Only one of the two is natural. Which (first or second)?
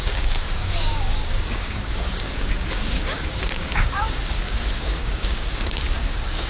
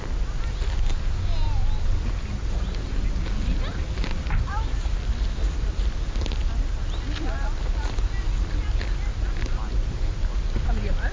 second